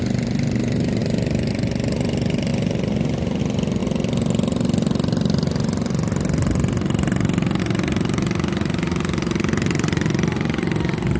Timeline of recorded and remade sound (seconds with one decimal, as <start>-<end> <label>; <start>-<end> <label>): 0.0-11.2 recorded